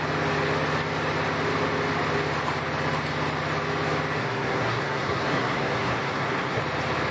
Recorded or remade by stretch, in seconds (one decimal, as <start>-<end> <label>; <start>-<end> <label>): 0.0-4.2 recorded; 4.2-6.6 remade; 6.6-7.1 recorded